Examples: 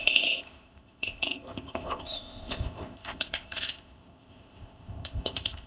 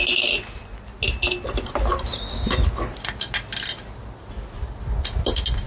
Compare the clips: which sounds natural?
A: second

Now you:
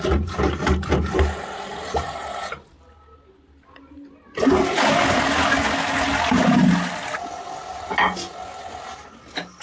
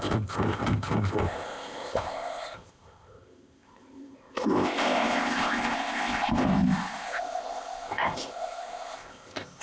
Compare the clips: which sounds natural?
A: first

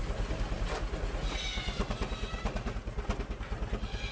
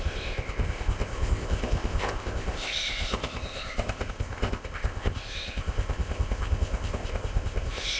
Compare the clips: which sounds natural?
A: first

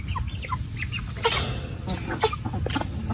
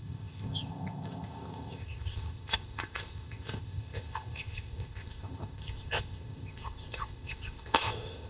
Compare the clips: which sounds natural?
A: first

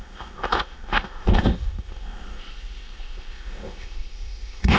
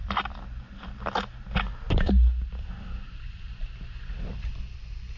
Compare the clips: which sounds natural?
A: second